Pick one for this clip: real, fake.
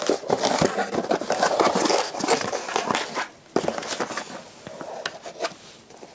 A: real